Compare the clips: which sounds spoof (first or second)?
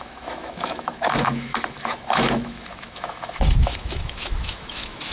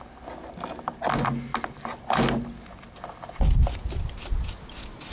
first